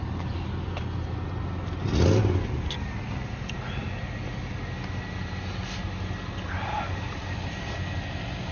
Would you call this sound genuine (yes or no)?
yes